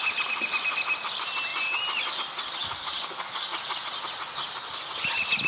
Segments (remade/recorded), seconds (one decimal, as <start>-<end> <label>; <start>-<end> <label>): 0.0-2.6 recorded; 2.6-3.5 remade; 3.5-5.5 recorded